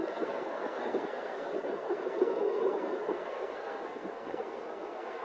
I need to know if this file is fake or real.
fake